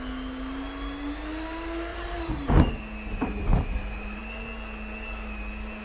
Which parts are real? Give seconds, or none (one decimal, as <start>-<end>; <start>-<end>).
0.0-1.9; 2.7-3.5; 4.2-5.8